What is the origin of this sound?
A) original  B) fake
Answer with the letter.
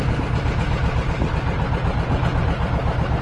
A